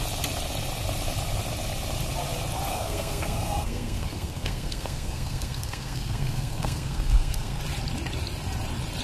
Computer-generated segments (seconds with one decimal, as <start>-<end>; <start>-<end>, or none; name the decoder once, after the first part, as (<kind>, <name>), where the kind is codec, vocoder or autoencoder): 2.7-7.6 (codec, SNAC)